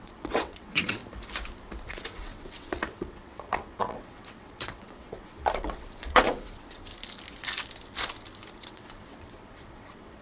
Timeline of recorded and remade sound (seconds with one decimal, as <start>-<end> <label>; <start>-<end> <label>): 0.0-1.0 remade; 1.0-1.9 recorded; 1.9-6.9 remade; 6.9-8.5 recorded; 8.5-10.2 remade